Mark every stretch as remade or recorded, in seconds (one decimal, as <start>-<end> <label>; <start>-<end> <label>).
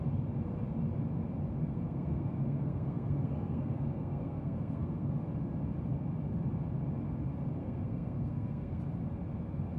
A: 0.0-1.6 recorded; 1.6-5.1 remade; 5.1-7.6 recorded; 7.6-8.8 remade; 8.8-9.8 recorded